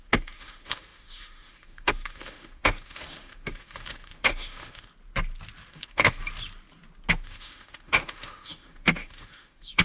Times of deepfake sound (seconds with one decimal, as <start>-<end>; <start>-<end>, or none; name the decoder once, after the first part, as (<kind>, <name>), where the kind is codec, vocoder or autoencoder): 0.0-4.9 (autoencoder, DAC-VAE); 5.7-6.2; 7.1-9.8